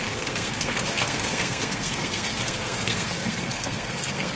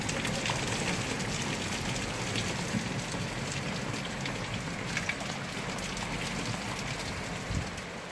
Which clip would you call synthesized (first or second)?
first